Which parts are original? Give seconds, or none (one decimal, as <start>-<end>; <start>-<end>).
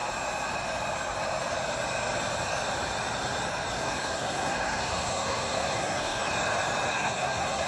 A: 0.0-3.8; 6.2-6.9